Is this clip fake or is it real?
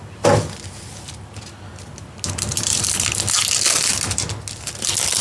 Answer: real